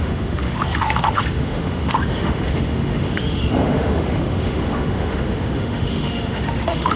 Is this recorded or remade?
remade